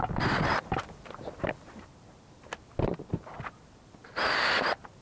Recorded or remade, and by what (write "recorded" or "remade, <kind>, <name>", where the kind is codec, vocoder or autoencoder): recorded